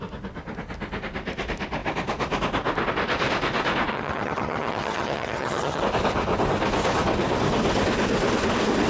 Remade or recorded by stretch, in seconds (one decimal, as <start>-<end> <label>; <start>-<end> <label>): 0.0-3.9 recorded; 3.9-5.8 remade; 5.8-8.9 recorded